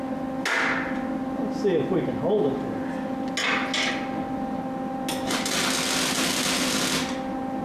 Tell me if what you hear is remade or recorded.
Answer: recorded